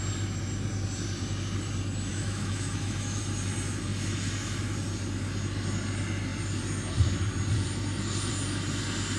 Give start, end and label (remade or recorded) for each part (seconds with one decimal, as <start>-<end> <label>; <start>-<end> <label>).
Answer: 0.0-2.1 recorded; 2.1-3.2 remade; 3.2-9.2 recorded